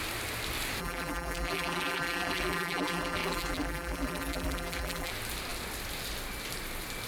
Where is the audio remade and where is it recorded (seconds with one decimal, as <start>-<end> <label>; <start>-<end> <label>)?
0.0-0.8 recorded; 0.8-5.1 remade; 5.1-7.1 recorded